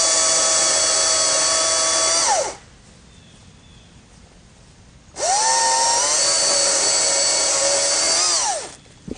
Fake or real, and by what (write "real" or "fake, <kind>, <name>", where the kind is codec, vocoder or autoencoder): real